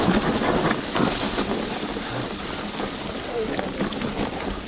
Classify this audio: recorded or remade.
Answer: recorded